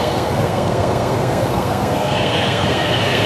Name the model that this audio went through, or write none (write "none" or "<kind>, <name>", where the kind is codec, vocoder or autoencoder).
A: codec, SNAC